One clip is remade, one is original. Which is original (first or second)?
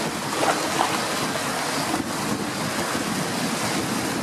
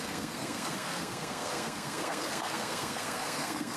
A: first